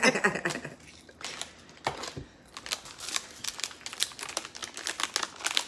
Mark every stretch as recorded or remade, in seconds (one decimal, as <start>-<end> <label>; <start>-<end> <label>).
0.0-5.7 recorded